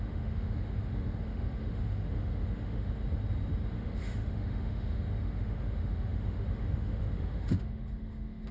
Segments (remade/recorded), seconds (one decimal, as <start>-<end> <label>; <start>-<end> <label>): 0.0-3.0 remade; 3.0-3.7 recorded; 3.7-8.5 remade